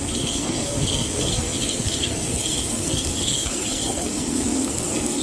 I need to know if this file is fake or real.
fake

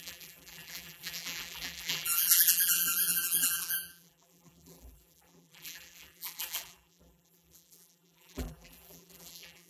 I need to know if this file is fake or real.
fake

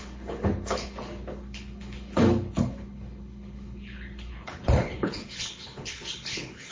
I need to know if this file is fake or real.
fake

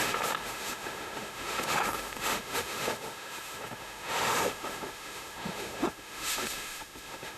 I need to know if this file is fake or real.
fake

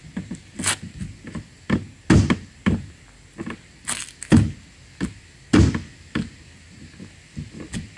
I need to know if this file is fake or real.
real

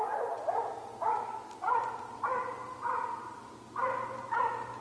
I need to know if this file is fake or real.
real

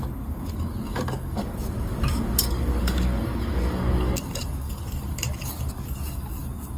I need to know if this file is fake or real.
fake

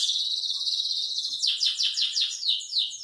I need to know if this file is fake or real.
fake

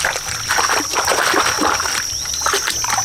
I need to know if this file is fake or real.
real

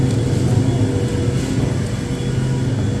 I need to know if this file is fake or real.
real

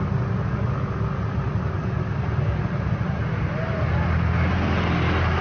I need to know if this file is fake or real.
real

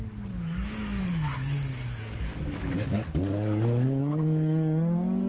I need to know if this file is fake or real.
fake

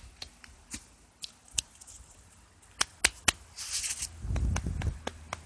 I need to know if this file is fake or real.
real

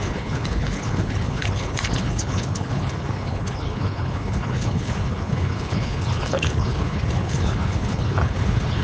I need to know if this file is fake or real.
fake